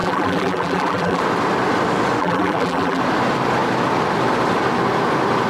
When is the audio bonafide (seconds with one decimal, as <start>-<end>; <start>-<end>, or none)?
1.2-2.2; 3.0-5.5